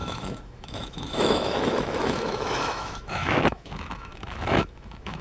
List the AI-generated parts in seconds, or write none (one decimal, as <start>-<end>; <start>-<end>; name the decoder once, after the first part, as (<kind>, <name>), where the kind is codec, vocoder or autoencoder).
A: 0.0-5.2 (autoencoder, DAC-VAE)